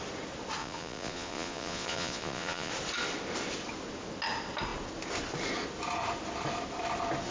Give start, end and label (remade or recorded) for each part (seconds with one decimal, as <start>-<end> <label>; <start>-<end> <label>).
0.0-0.6 recorded; 0.6-2.7 remade; 2.7-7.3 recorded